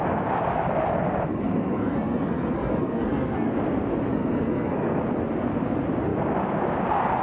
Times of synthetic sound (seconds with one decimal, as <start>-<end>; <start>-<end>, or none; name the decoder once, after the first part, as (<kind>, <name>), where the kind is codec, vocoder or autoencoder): 1.3-3.5 (codec, SNAC); 4.1-5.0